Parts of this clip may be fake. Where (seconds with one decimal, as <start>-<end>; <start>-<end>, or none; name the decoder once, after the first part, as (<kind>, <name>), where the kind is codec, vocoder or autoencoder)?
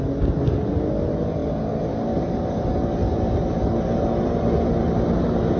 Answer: none